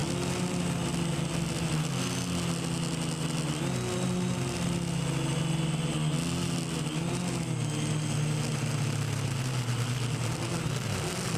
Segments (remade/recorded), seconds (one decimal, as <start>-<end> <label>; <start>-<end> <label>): 0.0-11.4 recorded